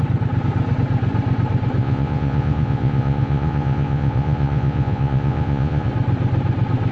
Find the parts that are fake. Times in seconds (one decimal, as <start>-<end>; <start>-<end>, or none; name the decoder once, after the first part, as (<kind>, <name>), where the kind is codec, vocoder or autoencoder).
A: 1.8-5.9 (vocoder, Vocos)